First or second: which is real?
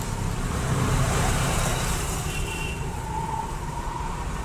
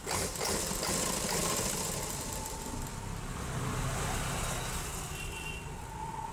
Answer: second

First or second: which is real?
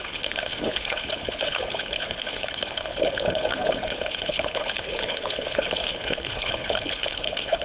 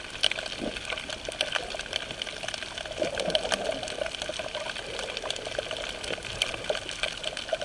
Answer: second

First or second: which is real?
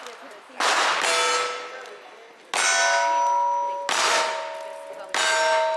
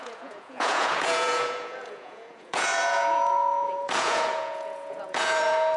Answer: first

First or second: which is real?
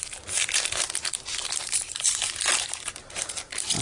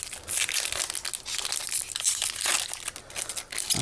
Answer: second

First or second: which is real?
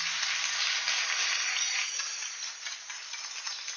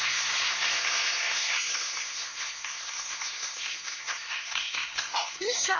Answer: first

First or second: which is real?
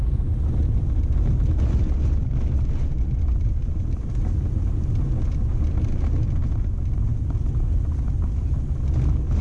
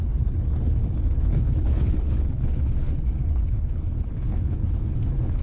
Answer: first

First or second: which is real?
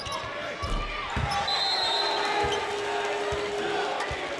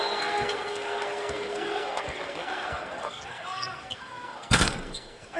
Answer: first